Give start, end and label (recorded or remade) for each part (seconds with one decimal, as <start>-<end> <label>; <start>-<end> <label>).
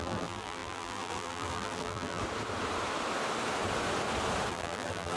0.0-2.2 remade; 2.2-4.5 recorded; 4.5-5.2 remade